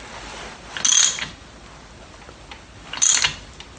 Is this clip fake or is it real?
real